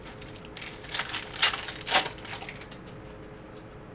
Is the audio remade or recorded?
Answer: recorded